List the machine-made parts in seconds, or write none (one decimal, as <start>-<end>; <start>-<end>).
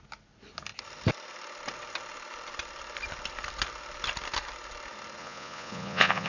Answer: 5.2-6.3